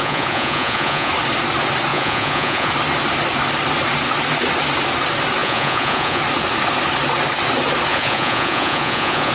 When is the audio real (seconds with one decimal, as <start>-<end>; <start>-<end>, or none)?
1.1-1.9; 2.7-5.4; 6.2-7.9